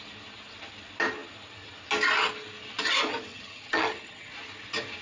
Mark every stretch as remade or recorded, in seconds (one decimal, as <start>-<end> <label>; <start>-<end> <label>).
0.0-3.3 recorded; 3.3-4.3 remade; 4.3-5.0 recorded